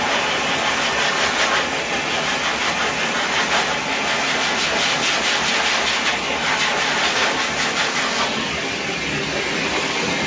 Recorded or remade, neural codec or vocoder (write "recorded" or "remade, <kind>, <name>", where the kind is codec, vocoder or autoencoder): recorded